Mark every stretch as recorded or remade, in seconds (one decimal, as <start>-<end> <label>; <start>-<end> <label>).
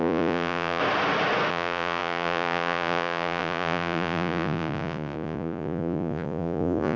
0.0-0.8 remade; 0.8-1.5 recorded; 1.5-7.0 remade